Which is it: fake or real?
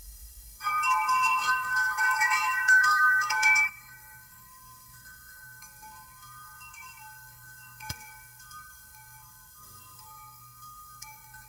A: fake